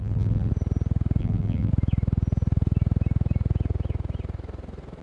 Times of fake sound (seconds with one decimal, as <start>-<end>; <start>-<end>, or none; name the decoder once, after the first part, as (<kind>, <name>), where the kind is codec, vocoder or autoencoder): 0.0-0.5 (vocoder, BigVGAN v2); 1.2-1.7